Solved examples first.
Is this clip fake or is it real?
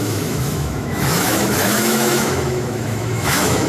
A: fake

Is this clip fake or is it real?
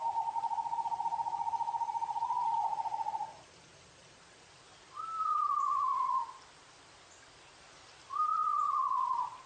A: real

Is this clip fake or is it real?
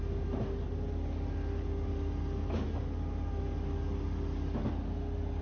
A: real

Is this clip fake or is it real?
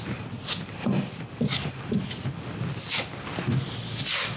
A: real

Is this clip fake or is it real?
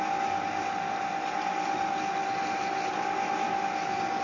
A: real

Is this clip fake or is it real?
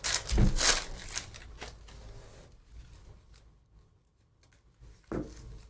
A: real